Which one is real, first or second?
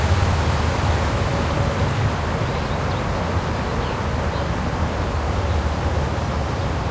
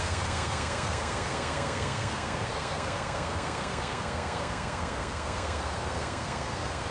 first